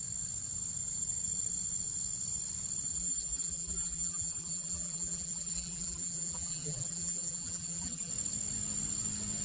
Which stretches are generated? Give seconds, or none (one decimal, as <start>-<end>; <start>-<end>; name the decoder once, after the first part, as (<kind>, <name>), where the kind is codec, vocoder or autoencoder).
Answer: 2.9-8.1 (vocoder, BigVGAN v2)